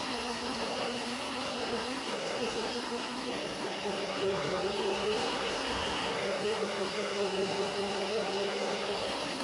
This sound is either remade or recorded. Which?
remade